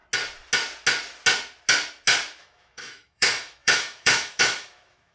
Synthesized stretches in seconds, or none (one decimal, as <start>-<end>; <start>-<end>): 2.4-5.1